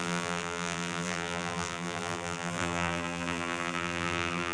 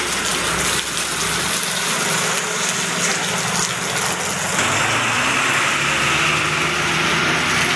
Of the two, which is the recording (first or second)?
second